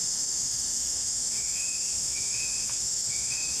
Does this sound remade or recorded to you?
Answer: remade